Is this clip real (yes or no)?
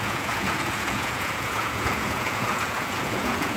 no